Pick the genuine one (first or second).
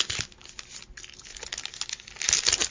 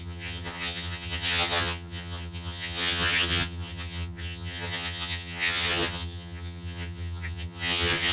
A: first